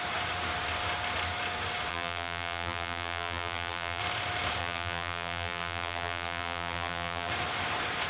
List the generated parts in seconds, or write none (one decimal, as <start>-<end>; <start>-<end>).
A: 1.9-4.0; 4.6-7.3